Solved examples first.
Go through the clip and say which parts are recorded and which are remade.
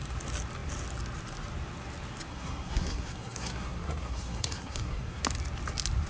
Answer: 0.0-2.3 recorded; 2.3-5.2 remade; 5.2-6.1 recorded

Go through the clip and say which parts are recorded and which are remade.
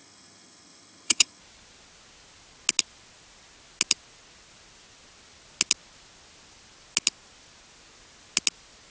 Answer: 0.0-1.4 remade; 1.4-8.9 recorded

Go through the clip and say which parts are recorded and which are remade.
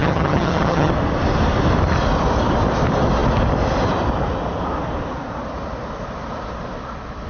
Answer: 0.0-0.9 remade; 0.9-7.3 recorded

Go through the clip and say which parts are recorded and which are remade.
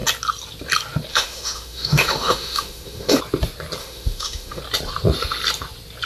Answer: 0.0-1.1 recorded; 1.1-3.2 remade; 3.2-3.8 recorded; 3.8-4.6 remade; 4.6-6.1 recorded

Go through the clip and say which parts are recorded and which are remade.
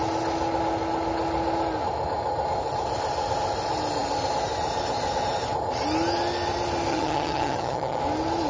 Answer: 0.0-6.9 recorded; 6.9-8.0 remade; 8.0-8.5 recorded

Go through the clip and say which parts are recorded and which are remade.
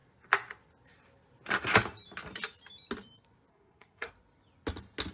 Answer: 0.0-3.5 recorded; 3.5-4.1 remade; 4.1-5.1 recorded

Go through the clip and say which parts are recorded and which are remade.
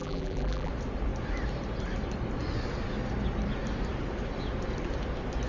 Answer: 0.0-0.7 remade; 0.7-5.5 recorded